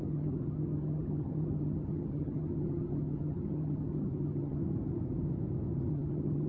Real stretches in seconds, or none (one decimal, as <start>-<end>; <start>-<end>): 4.6-5.9